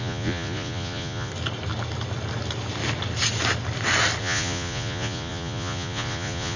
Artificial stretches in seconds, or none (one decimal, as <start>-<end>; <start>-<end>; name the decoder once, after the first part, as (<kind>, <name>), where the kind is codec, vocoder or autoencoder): 0.0-1.3 (vocoder, Vocos); 4.2-6.6